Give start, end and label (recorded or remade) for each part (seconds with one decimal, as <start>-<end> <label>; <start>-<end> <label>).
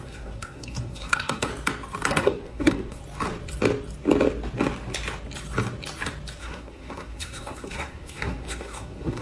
0.0-1.5 remade; 1.5-2.1 recorded; 2.1-3.0 remade; 3.0-6.4 recorded; 6.4-9.2 remade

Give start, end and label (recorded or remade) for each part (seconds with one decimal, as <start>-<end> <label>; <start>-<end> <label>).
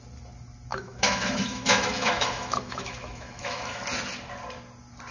0.0-0.7 recorded; 0.7-3.8 remade; 3.8-5.1 recorded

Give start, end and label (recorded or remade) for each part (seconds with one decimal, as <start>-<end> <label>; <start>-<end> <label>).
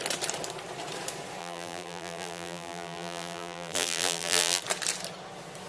0.0-1.4 recorded; 1.4-4.6 remade; 4.6-5.7 recorded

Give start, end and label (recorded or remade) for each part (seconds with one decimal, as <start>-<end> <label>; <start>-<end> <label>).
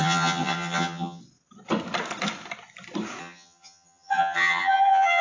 0.0-1.2 remade; 1.2-3.2 recorded; 3.2-5.2 remade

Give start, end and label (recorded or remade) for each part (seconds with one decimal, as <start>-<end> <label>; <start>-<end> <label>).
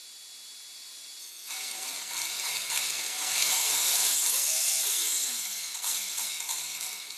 0.0-1.2 recorded; 1.2-7.2 remade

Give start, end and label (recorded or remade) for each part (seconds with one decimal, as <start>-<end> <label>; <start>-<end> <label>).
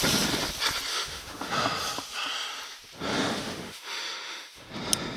0.0-0.9 recorded; 0.9-1.5 remade; 1.5-3.1 recorded; 3.1-4.7 remade; 4.7-5.2 recorded